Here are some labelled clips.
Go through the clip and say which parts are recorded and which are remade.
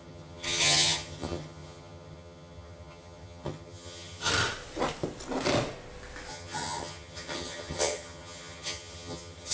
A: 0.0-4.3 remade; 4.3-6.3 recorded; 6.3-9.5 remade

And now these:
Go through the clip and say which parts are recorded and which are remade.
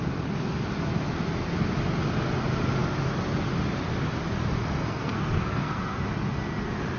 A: 0.0-4.8 recorded; 4.8-6.0 remade; 6.0-7.0 recorded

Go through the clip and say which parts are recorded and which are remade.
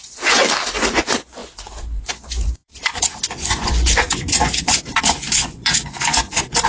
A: 0.0-0.4 remade; 0.4-0.9 recorded; 0.9-6.7 remade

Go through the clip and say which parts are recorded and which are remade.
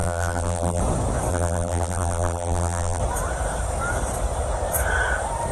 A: 0.0-0.8 remade; 0.8-1.3 recorded; 1.3-3.0 remade; 3.0-5.5 recorded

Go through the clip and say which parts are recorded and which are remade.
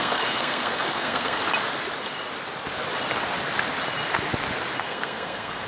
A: 0.0-1.4 remade; 1.4-4.8 recorded; 4.8-5.7 remade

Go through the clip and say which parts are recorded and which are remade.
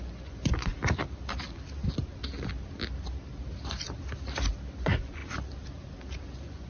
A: 0.0-0.7 remade; 0.7-4.7 recorded; 4.7-5.2 remade; 5.2-6.3 recorded; 6.3-6.7 remade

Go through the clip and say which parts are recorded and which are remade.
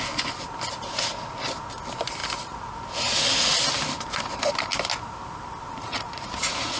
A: 0.0-5.8 recorded; 5.8-6.8 remade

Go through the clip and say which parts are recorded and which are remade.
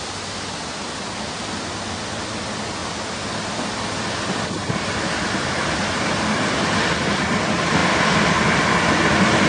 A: 0.0-9.5 recorded